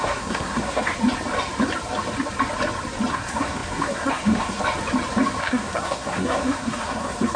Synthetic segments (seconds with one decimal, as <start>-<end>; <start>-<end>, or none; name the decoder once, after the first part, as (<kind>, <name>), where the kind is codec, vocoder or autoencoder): 0.0-0.9 (codec, SNAC); 3.1-4.6; 5.4-7.4